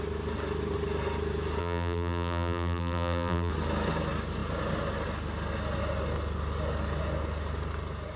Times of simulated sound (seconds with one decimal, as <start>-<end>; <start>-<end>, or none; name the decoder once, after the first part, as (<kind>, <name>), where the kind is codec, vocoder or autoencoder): 1.6-3.5 (vocoder, BigVGAN v2)